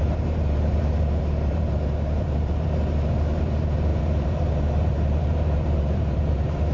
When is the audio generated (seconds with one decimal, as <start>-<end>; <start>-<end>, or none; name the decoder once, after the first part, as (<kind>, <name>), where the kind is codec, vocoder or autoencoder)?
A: 0.0-6.7 (vocoder, BigVGAN v2)